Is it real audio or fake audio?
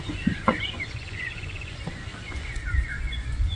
fake